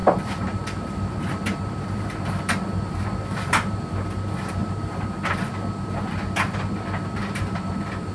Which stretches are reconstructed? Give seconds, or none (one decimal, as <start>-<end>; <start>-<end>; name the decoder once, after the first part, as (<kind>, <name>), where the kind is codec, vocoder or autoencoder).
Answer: 0.0-3.8 (vocoder, BigVGAN v2); 4.6-5.5; 7.2-8.1